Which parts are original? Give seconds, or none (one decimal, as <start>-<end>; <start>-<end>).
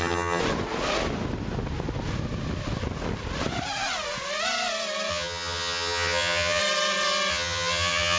0.4-5.1; 6.6-7.3